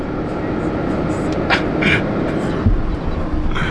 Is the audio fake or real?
real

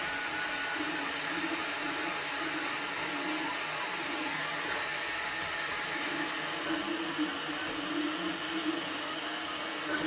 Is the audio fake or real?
real